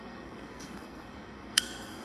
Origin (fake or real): fake